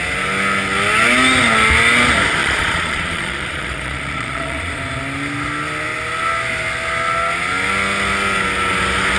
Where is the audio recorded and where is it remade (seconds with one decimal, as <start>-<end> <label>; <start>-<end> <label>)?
0.0-2.4 recorded; 2.4-4.8 remade; 4.8-9.2 recorded